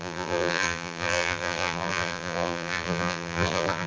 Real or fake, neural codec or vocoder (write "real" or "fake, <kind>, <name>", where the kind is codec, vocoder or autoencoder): fake, vocoder, BigVGAN v2